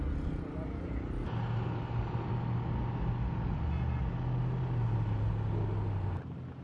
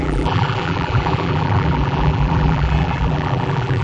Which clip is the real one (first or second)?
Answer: first